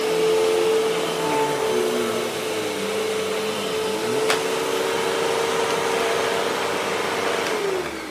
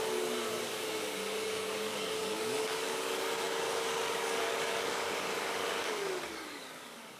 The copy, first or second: second